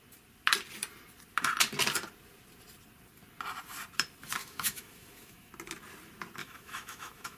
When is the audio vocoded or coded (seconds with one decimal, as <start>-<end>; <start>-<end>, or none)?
4.4-5.5; 6.4-7.4